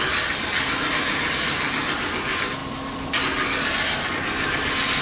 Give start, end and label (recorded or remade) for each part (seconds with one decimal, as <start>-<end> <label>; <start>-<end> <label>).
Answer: 0.0-5.0 recorded